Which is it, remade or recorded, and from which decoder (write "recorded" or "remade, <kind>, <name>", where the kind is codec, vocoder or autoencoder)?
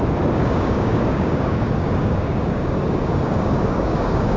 remade, codec, DAC